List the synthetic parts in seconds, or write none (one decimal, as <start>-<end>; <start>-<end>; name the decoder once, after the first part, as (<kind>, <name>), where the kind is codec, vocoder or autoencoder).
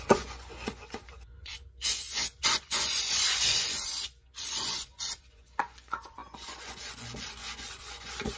0.0-8.4 (vocoder, Vocos)